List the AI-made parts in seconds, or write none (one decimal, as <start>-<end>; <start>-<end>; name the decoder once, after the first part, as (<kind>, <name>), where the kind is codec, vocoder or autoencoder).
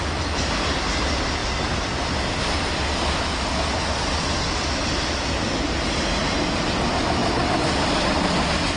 none